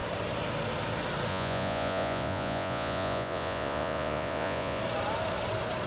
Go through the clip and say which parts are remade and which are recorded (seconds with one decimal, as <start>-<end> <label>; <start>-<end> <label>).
0.0-1.3 recorded; 1.3-4.8 remade; 4.8-5.9 recorded